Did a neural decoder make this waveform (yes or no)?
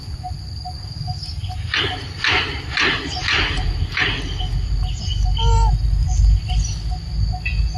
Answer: no